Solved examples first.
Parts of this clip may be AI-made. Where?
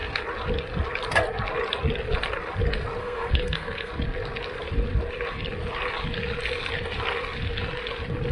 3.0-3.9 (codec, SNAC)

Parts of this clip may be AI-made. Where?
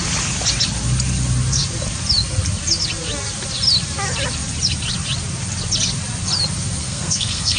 6.8-7.6 (codec, SNAC)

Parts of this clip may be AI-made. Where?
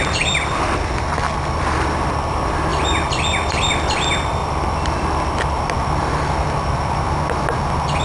none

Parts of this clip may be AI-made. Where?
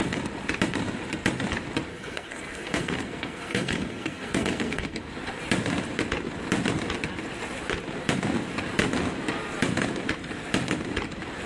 1.9-5.0 (codec, SNAC)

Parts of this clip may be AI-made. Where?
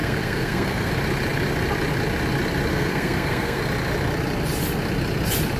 0.0-0.9 (codec, SNAC); 2.7-3.6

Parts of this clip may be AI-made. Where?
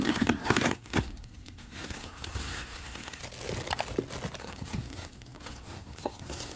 0.0-3.2 (codec, SNAC); 4.4-6.6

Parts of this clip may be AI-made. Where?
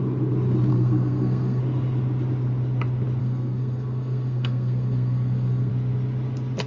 0.7-1.6 (codec, SNAC); 3.2-5.7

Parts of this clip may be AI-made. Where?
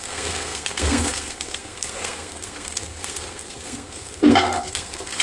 0.0-5.2 (codec, SNAC)